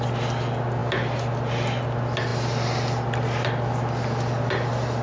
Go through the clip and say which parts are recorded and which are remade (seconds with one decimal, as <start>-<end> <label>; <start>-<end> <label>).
0.0-5.0 recorded